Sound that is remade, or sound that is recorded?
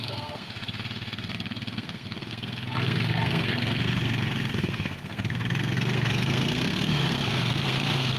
remade